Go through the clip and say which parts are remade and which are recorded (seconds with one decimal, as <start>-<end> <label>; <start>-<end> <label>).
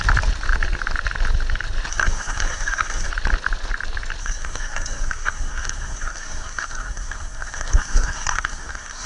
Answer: 0.0-1.9 recorded; 1.9-3.1 remade; 3.1-4.2 recorded; 4.2-9.1 remade